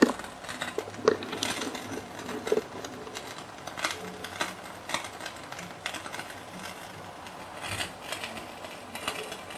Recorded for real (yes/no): yes